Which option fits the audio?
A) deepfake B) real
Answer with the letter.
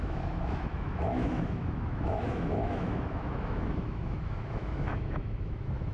A